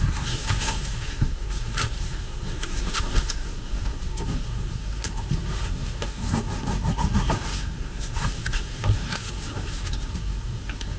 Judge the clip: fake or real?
fake